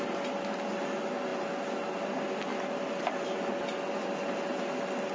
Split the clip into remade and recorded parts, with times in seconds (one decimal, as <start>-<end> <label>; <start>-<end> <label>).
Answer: 0.0-5.1 recorded